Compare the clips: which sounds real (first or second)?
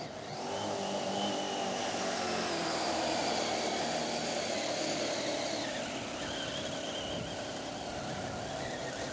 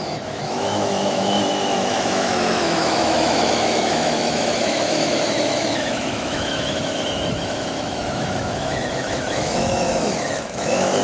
first